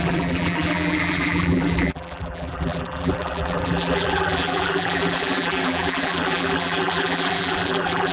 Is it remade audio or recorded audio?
remade